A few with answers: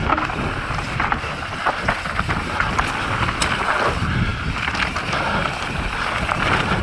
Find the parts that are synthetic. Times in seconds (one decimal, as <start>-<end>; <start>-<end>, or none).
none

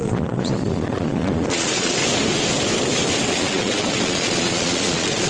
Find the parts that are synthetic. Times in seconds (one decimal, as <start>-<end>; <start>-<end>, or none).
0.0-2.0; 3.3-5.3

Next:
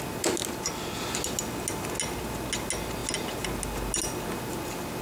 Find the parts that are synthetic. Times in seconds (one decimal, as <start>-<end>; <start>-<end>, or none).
none

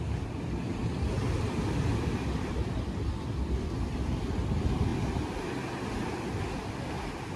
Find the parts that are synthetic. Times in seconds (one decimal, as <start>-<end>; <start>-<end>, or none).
none

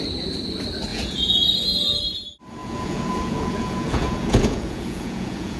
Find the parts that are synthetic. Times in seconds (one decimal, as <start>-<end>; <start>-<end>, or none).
0.9-1.5; 2.6-5.6

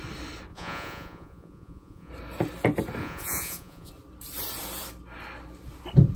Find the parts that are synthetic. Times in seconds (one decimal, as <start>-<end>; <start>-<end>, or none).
0.5-2.1; 3.0-3.9

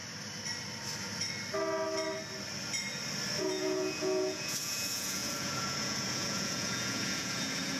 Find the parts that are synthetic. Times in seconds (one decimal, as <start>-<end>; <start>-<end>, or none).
3.4-7.8